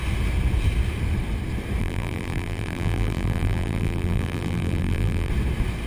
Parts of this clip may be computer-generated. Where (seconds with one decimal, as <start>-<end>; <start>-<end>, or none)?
1.8-5.3